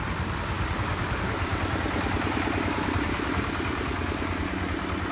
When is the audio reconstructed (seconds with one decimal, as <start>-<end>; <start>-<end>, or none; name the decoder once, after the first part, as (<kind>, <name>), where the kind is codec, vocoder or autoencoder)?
none